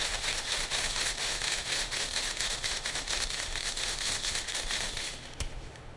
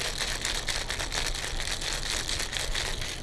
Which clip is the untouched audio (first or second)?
second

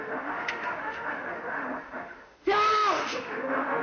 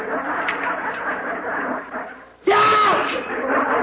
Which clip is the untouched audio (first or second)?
second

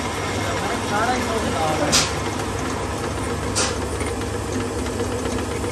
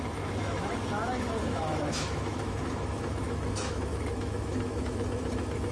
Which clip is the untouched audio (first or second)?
first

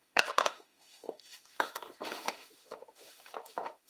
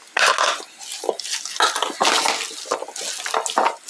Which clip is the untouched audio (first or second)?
second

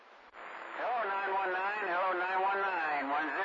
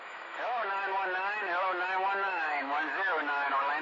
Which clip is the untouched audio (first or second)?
first